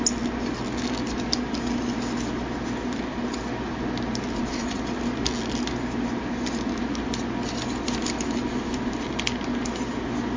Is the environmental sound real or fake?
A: real